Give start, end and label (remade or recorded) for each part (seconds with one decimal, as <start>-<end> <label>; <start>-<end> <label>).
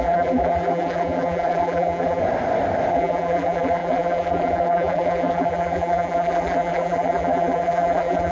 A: 0.0-2.2 remade; 2.2-2.9 recorded; 2.9-8.3 remade